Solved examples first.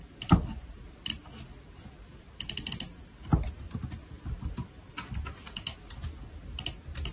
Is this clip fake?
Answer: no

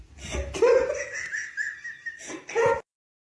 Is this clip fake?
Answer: no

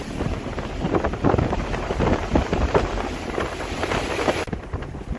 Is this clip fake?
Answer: yes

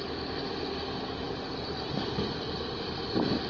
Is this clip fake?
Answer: yes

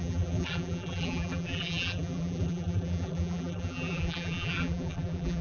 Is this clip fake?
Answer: yes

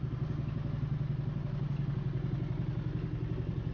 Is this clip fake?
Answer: no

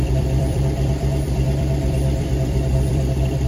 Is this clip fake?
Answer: yes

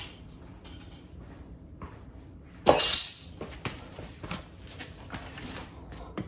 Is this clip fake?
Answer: yes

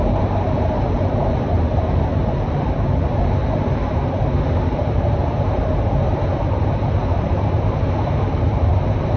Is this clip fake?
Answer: yes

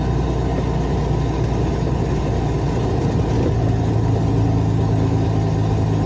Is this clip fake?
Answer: no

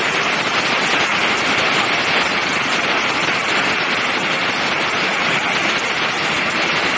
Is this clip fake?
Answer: no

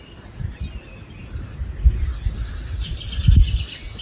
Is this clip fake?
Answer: no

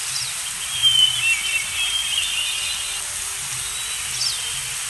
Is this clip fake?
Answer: no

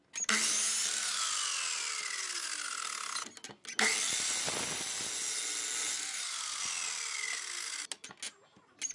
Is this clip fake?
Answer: no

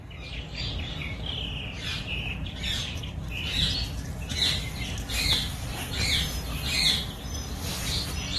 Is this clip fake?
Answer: no